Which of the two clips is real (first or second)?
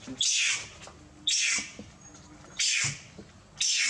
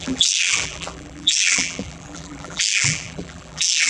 first